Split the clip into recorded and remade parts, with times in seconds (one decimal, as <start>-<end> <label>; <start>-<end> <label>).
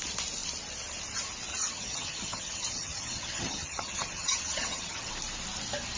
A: 0.0-1.5 recorded; 1.5-5.1 remade; 5.1-6.0 recorded